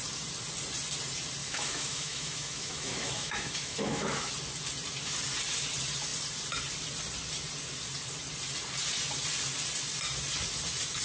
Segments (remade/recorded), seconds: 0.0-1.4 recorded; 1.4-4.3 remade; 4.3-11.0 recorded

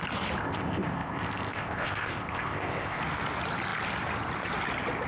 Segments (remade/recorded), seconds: 0.0-0.4 recorded; 0.4-3.0 remade; 3.0-5.1 recorded

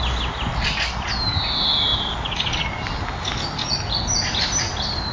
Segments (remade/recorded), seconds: 0.0-5.1 recorded

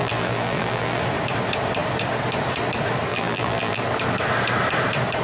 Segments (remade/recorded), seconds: 0.0-1.0 remade; 1.0-3.1 recorded; 3.1-3.8 remade; 3.8-5.2 recorded

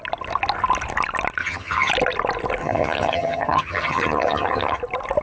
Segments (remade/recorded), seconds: 0.0-1.4 recorded; 1.4-1.9 remade; 1.9-2.6 recorded; 2.6-4.8 remade; 4.8-5.2 recorded

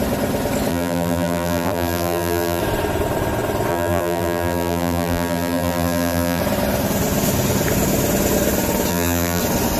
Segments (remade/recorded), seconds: 0.0-0.7 recorded; 0.7-2.6 remade; 2.6-3.7 recorded; 3.7-6.4 remade; 6.4-8.9 recorded; 8.9-9.4 remade; 9.4-9.8 recorded

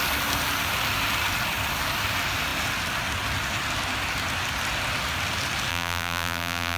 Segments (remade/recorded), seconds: 0.0-5.7 recorded; 5.7-6.8 remade

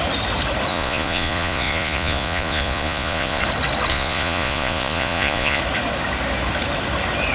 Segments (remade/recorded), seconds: 0.0-0.7 recorded; 0.7-3.4 remade; 3.4-3.9 recorded; 3.9-5.6 remade; 5.6-7.3 recorded